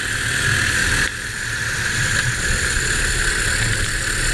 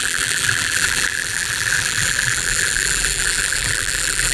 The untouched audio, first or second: first